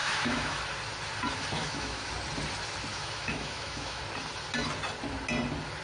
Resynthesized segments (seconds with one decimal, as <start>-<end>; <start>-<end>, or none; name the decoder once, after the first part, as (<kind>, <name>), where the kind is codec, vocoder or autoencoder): 0.0-0.6 (autoencoder, DAC-VAE); 1.6-2.1; 2.9-4.0